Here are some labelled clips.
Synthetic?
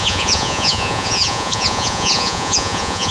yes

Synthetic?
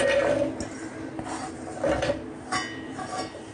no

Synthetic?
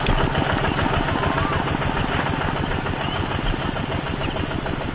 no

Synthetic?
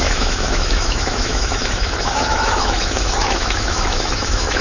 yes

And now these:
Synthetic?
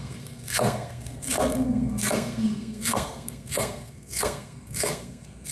yes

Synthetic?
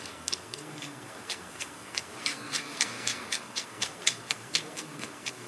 yes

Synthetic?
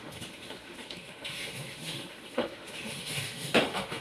yes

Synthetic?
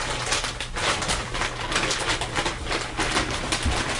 no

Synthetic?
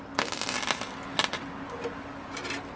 no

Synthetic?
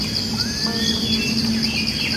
no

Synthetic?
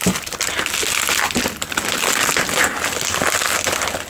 no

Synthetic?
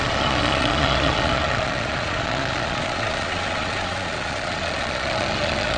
yes